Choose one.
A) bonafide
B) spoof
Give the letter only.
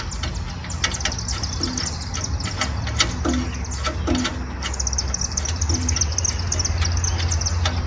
A